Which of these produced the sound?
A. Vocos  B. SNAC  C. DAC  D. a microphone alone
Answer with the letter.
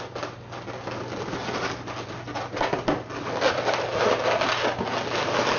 D